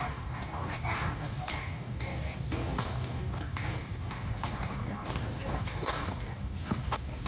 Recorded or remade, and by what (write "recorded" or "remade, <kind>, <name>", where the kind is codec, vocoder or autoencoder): remade, codec, DAC